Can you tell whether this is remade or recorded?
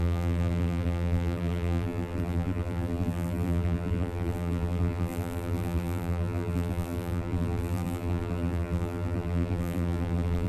remade